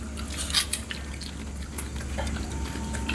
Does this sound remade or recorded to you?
recorded